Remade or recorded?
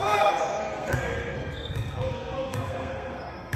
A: remade